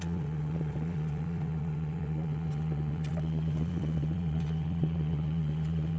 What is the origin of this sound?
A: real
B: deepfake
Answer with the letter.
B